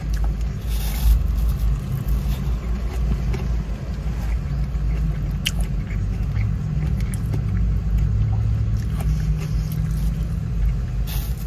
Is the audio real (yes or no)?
yes